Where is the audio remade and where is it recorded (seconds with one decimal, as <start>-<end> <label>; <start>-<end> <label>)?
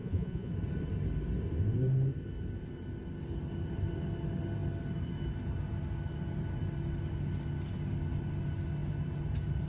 0.0-0.5 remade; 0.5-9.7 recorded